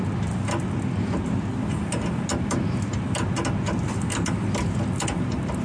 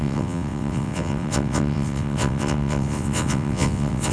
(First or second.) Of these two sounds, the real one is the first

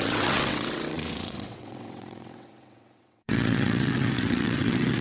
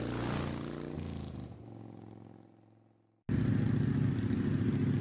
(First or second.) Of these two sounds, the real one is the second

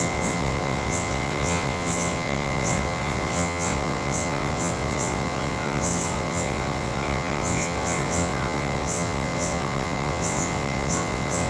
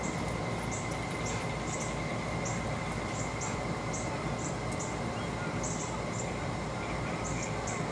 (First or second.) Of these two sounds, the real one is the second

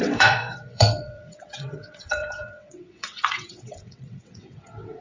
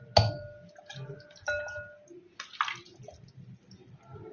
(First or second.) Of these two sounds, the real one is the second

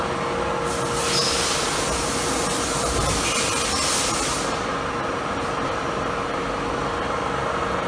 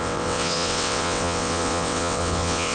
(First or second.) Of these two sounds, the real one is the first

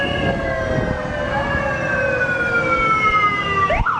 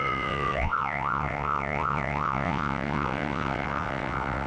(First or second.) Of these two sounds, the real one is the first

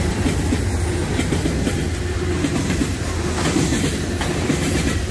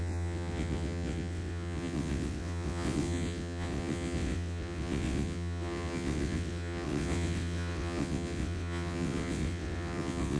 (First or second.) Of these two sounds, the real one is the first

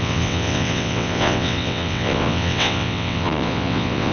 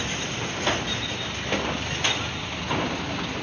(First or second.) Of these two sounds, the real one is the second